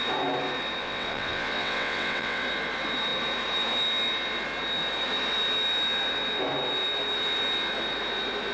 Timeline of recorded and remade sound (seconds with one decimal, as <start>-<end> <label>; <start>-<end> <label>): 0.0-0.8 recorded; 0.8-2.4 remade; 2.4-8.5 recorded